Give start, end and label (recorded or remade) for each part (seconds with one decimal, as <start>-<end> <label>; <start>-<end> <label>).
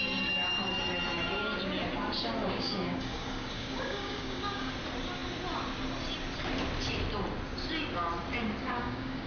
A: 0.0-2.4 recorded; 2.4-4.7 remade; 4.7-8.6 recorded; 8.6-9.3 remade